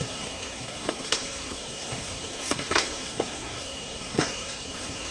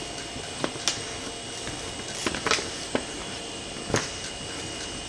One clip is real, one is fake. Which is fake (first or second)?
first